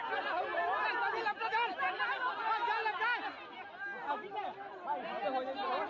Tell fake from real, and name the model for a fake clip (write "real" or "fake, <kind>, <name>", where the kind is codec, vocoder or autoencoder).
real